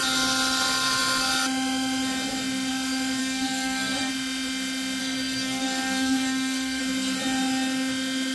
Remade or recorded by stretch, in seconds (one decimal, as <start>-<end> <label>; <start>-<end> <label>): 0.0-3.2 recorded; 3.2-4.1 remade; 4.1-5.0 recorded; 5.0-6.8 remade; 6.8-8.3 recorded